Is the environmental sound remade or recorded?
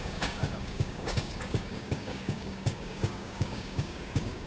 remade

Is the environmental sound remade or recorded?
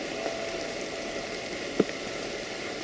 recorded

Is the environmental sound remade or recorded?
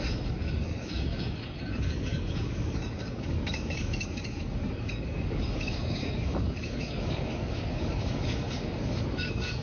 remade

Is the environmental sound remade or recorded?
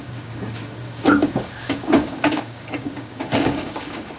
remade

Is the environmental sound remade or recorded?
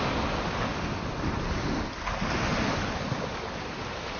recorded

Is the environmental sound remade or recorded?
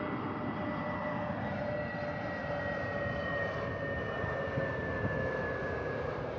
recorded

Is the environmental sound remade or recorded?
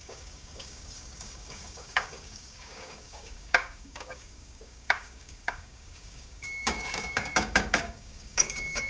remade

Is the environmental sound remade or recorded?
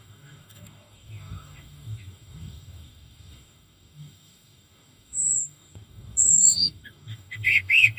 remade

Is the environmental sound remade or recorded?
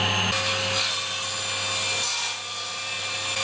recorded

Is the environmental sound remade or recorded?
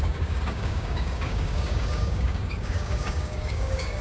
remade